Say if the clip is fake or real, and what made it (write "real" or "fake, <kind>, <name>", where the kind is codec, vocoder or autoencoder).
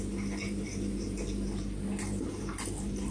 real